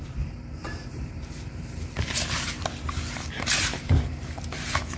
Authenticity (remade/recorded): remade